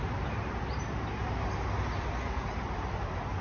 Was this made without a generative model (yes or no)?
yes